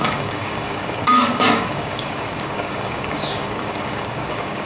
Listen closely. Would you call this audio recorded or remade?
remade